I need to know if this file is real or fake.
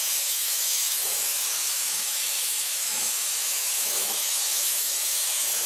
fake